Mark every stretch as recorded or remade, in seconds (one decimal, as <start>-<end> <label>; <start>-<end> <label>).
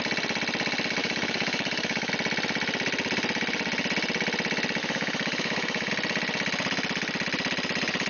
0.0-1.0 recorded; 1.0-2.1 remade; 2.1-4.8 recorded; 4.8-5.9 remade; 5.9-8.1 recorded